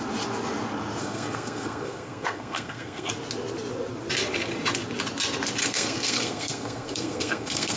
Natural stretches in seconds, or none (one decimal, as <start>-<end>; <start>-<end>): 0.0-1.0; 3.1-5.6